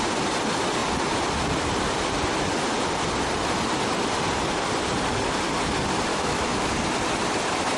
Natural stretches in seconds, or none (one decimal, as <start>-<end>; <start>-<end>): 0.0-6.1; 6.7-7.8